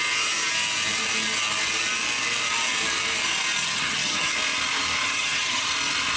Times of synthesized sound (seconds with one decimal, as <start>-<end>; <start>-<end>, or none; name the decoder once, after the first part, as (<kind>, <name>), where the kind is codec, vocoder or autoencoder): 3.6-4.3 (vocoder, HiFi-GAN); 5.0-5.7